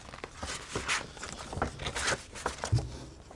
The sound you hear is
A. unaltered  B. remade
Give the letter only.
A